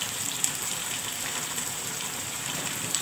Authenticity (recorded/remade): remade